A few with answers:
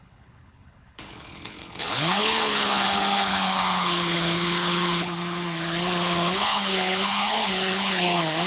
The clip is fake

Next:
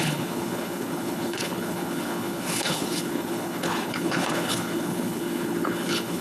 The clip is fake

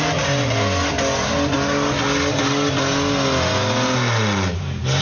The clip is real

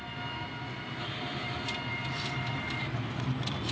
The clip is real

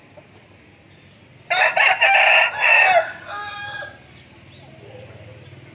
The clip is real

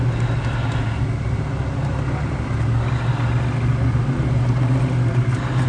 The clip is real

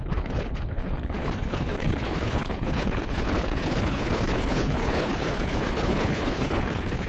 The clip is fake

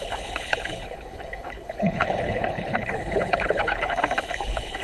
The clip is fake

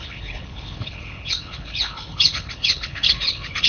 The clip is fake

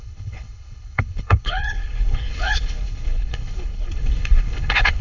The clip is fake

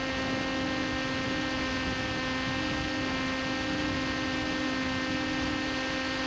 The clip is real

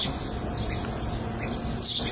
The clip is real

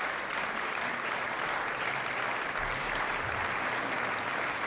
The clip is real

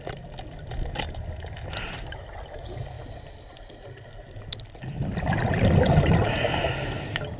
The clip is real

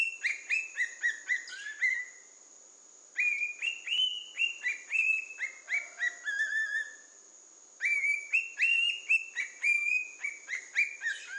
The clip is real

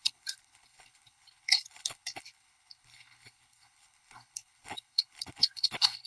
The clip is fake